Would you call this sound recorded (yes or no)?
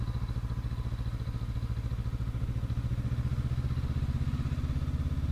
yes